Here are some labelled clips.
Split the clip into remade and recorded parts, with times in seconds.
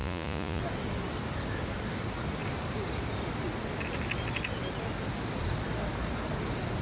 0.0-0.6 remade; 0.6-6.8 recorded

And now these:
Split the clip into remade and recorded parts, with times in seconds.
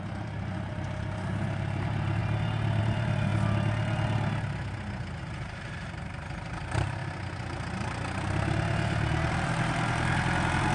0.0-2.2 remade; 2.2-2.8 recorded; 2.8-3.3 remade; 3.3-5.2 recorded; 5.2-7.0 remade; 7.0-9.3 recorded; 9.3-10.7 remade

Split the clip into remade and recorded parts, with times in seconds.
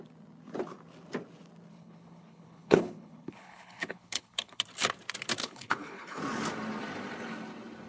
0.0-1.7 recorded; 1.7-4.6 remade; 4.6-5.4 recorded; 5.4-6.2 remade; 6.2-7.9 recorded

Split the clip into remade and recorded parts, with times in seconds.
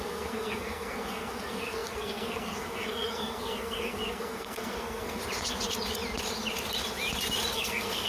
0.0-5.2 remade; 5.2-7.5 recorded; 7.5-8.1 remade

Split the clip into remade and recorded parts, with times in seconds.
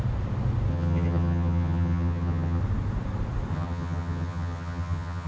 0.0-0.7 recorded; 0.7-2.6 remade; 2.6-3.5 recorded; 3.5-5.3 remade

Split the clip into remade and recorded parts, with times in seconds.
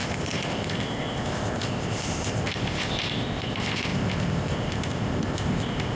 0.0-6.0 remade